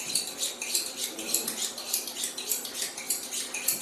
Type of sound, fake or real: real